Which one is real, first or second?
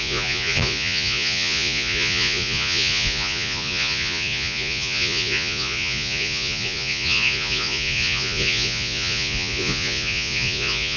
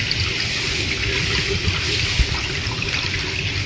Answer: second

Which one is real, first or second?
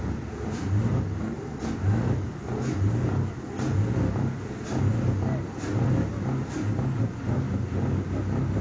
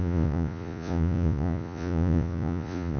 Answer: first